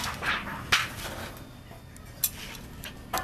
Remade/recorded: recorded